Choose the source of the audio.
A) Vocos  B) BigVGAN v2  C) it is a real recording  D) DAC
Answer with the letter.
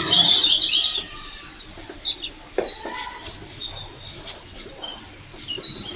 C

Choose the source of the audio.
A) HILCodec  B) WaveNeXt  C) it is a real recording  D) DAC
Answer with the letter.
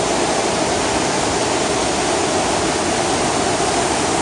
C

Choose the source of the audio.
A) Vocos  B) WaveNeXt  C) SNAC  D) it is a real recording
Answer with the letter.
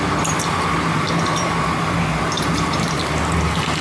D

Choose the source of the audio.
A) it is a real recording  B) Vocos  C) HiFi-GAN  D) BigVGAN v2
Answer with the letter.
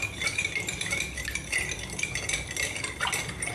A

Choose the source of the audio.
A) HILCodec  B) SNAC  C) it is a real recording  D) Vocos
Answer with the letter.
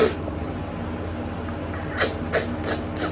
C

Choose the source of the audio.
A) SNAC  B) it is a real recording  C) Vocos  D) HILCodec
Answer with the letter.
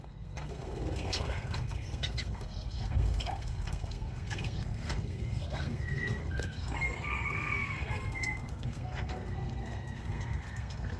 A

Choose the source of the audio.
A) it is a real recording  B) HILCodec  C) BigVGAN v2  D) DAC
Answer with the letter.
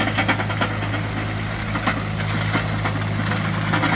A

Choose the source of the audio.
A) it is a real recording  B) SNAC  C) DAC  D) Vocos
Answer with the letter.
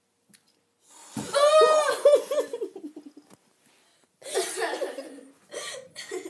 A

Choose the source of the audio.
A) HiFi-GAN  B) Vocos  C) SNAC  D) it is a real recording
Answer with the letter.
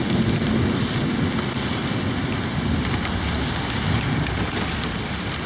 D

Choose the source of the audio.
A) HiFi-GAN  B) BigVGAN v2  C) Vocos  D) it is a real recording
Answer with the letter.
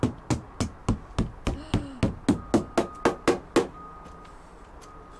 D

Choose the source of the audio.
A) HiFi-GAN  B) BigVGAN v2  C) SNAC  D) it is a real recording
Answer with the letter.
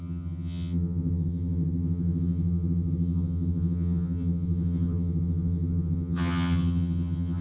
A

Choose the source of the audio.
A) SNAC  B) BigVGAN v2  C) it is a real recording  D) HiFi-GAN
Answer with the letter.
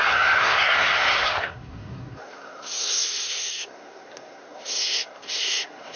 A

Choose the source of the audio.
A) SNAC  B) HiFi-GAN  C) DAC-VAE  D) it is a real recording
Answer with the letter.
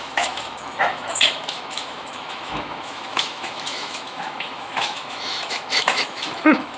C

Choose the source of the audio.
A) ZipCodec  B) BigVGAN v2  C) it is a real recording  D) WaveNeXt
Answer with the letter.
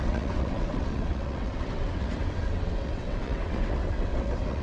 D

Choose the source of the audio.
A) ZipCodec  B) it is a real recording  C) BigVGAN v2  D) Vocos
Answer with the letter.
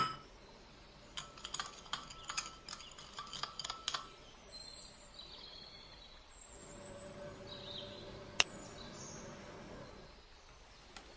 B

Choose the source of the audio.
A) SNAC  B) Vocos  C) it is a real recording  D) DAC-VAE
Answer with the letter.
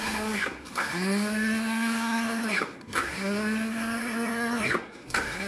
A